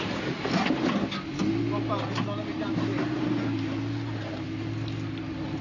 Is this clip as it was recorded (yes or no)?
yes